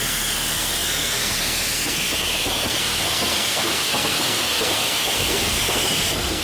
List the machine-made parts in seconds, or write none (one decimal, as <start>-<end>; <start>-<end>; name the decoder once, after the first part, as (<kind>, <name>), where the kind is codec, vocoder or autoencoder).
0.0-6.4 (codec, SNAC)